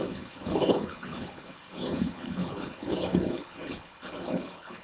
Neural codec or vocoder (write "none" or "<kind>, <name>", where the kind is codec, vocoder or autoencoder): codec, HILCodec